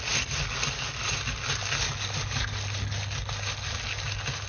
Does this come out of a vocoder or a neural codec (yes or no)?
no